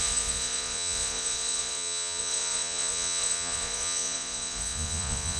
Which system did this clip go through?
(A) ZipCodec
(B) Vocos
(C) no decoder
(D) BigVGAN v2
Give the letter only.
B